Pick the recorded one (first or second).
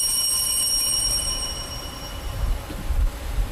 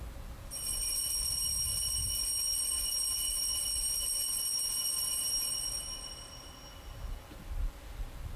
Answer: second